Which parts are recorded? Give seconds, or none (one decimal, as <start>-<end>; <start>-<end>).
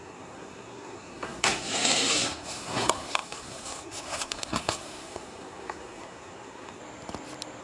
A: 6.8-7.6